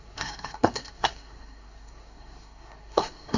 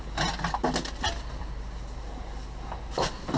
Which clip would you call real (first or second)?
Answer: second